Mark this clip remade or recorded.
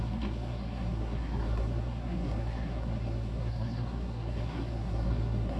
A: remade